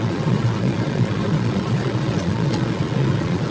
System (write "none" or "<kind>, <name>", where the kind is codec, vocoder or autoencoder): vocoder, Vocos